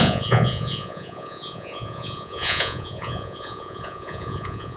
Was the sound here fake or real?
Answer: fake